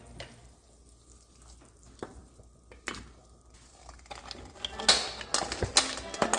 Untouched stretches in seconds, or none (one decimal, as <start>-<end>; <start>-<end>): 0.0-6.4